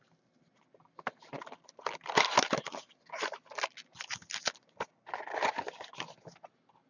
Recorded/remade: recorded